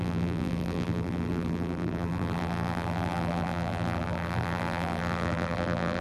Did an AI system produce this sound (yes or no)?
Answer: yes